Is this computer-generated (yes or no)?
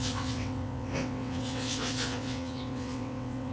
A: yes